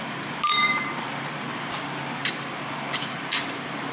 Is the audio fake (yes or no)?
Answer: yes